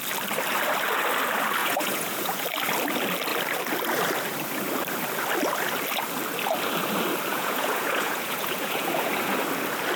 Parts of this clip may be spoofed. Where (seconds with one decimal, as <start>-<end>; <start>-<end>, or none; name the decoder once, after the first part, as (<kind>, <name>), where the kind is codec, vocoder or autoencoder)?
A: 1.6-2.4 (vocoder, Vocos); 7.3-9.1